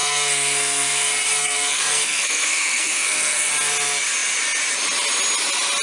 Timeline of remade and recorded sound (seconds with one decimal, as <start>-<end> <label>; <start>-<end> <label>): 0.0-3.5 remade; 3.5-5.8 recorded